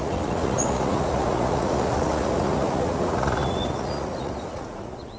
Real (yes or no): no